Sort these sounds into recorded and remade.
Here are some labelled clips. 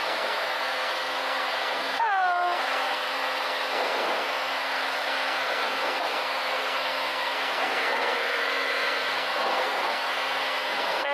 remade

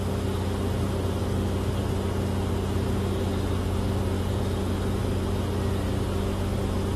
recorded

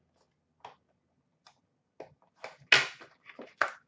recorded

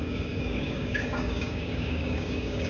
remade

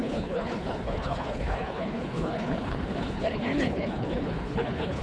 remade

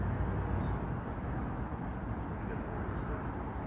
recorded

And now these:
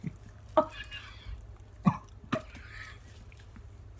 recorded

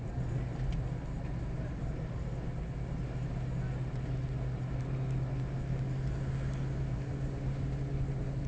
recorded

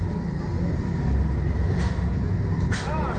recorded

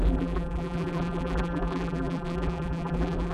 remade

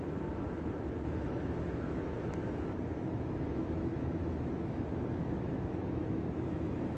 remade